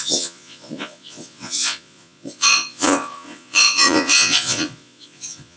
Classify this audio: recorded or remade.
remade